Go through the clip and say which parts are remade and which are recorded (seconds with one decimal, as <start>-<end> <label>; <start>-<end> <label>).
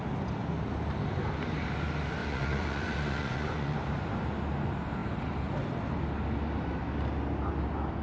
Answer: 0.0-2.2 recorded; 2.2-3.8 remade; 3.8-8.0 recorded